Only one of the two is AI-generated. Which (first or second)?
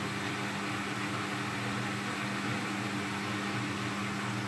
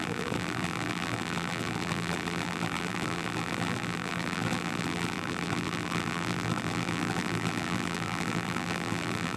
second